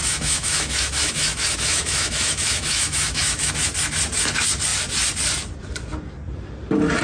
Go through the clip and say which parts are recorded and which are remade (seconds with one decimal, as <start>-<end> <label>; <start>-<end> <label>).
0.0-3.5 remade; 3.5-7.0 recorded